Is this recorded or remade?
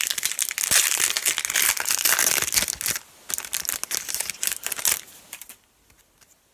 recorded